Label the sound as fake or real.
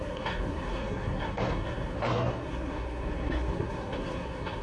fake